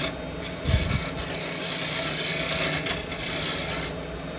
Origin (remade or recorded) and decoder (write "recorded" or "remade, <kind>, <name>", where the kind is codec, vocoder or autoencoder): recorded